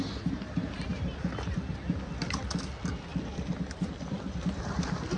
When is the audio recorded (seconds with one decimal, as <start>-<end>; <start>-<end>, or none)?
0.0-0.9; 1.6-3.1